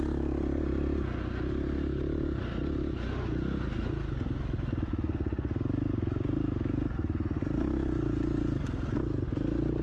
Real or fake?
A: real